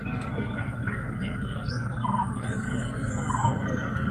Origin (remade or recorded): remade